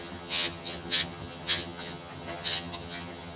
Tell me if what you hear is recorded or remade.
remade